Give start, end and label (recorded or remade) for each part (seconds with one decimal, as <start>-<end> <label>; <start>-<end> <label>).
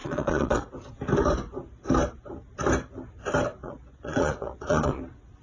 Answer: 0.0-0.7 remade; 0.7-3.6 recorded; 3.6-5.0 remade; 5.0-5.4 recorded